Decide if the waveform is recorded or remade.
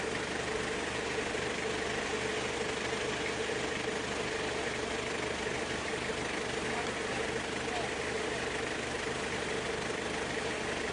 recorded